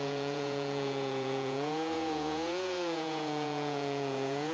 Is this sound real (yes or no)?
no